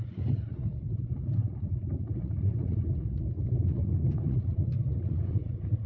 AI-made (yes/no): yes